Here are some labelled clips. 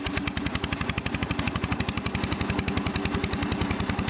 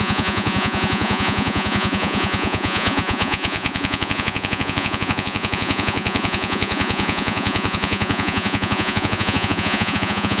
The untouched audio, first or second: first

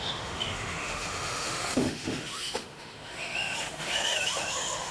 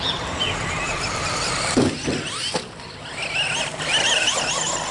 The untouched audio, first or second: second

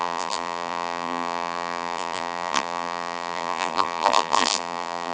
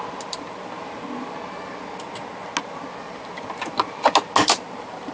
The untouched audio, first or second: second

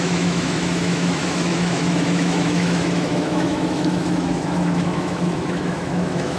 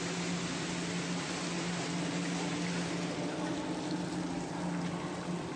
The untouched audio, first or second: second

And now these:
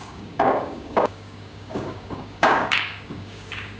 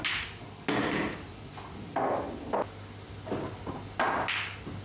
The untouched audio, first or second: second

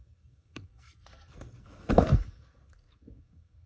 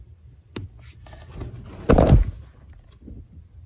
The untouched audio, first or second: second